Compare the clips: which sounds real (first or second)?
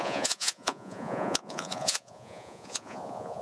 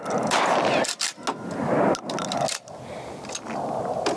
second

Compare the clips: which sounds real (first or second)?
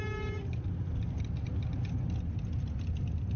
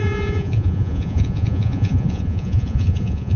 first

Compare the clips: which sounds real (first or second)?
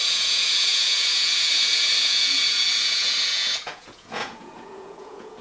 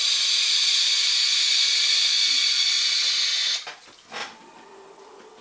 second